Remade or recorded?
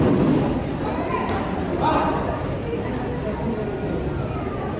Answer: recorded